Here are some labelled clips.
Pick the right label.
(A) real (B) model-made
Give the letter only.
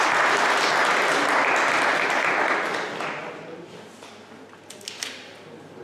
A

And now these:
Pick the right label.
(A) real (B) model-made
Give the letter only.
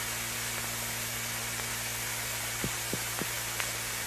A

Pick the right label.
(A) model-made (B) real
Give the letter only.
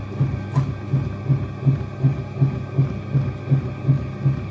B